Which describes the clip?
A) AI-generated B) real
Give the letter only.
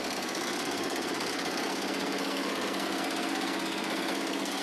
A